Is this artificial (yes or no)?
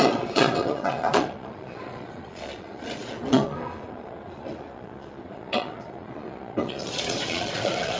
yes